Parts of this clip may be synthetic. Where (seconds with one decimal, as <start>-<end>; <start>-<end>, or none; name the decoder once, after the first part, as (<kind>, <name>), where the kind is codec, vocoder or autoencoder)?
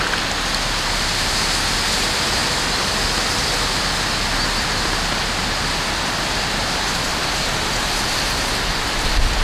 none